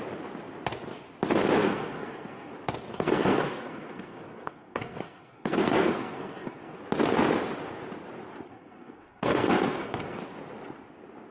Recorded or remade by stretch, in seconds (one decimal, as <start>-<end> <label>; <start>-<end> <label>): 0.0-1.6 recorded; 1.6-2.5 remade; 2.5-2.9 recorded; 2.9-6.8 remade; 6.8-8.5 recorded; 8.5-10.2 remade; 10.2-11.3 recorded